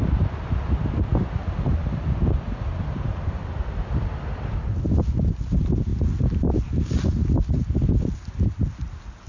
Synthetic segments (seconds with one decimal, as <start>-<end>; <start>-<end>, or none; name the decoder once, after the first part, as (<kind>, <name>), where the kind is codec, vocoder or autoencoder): none